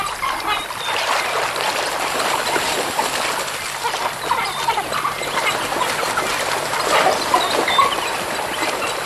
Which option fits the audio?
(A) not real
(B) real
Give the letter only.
B